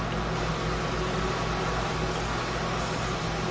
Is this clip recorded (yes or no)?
yes